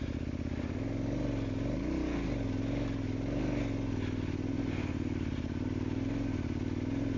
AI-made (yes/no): no